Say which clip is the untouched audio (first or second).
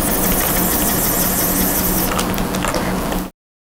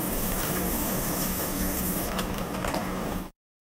first